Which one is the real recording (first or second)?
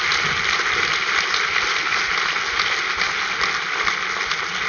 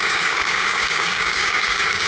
first